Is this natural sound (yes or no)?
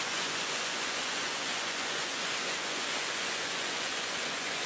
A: no